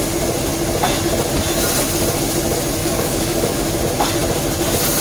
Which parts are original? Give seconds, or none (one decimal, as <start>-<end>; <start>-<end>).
0.0-2.8; 3.8-5.0